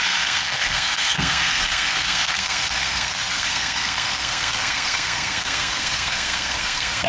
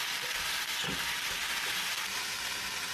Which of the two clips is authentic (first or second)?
second